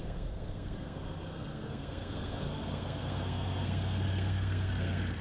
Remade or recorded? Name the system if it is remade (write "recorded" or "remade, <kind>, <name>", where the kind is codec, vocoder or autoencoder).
remade, codec, SNAC